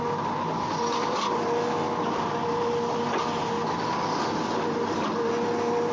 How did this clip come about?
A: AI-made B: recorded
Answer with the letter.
B